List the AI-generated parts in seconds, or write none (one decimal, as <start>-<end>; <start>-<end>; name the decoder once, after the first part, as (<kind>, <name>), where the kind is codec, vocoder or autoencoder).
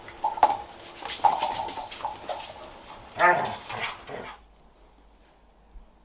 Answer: none